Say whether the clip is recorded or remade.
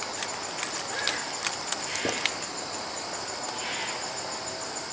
recorded